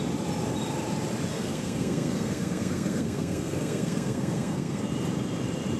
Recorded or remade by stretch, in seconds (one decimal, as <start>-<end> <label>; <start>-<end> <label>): 0.0-1.3 recorded; 1.3-4.8 remade; 4.8-5.8 recorded